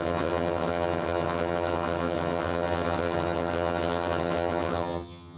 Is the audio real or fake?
fake